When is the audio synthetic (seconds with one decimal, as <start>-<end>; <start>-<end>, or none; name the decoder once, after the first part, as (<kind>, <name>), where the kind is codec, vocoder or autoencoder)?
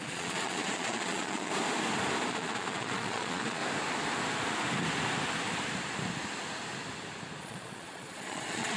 0.0-1.5 (vocoder, Vocos); 2.3-3.6; 7.4-8.8